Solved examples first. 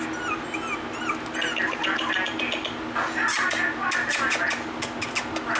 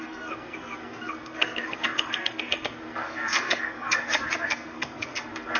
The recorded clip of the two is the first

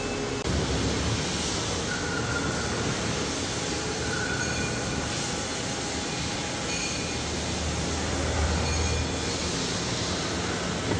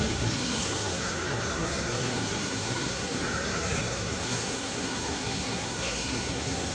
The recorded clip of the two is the first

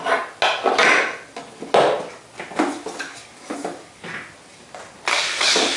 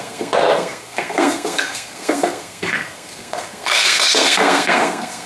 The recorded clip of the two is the first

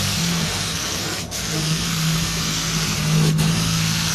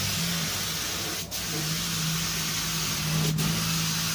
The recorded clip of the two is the second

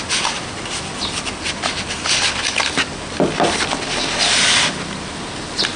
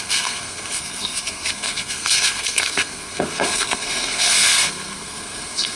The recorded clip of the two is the first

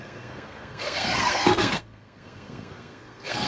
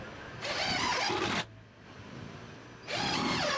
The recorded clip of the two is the second